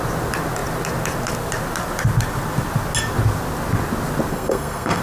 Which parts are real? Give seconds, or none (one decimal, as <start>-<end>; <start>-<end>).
0.0-4.3